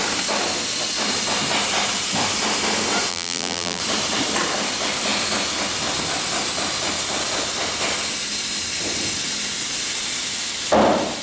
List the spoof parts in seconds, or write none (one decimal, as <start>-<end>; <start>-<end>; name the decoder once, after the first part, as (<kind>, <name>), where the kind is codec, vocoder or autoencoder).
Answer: 3.1-3.8 (vocoder, BigVGAN v2)